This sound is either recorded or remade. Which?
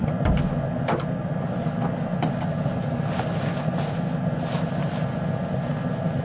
recorded